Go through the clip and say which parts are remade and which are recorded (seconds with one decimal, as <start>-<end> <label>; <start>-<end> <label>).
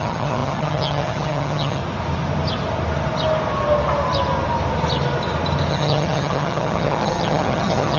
0.0-1.8 remade; 1.8-5.7 recorded; 5.7-8.0 remade